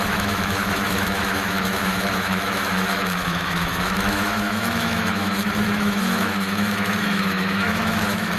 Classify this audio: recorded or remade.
remade